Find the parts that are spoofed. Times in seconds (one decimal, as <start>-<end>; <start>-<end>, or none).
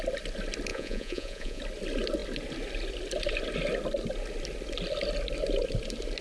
0.7-1.6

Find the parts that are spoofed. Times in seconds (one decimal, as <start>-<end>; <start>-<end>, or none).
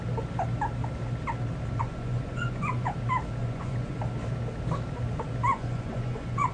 1.8-2.9; 3.4-4.0; 5.5-6.5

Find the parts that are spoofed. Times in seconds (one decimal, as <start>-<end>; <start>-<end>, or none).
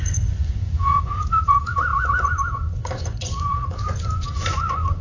0.0-5.0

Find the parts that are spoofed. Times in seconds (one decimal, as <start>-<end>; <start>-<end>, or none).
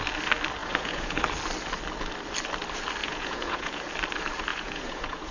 0.6-1.2; 3.0-3.8; 4.5-5.3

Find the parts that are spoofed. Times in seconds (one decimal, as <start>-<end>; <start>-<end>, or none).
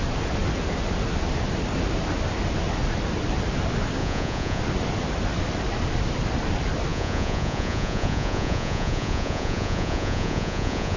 4.0-4.6; 6.9-11.0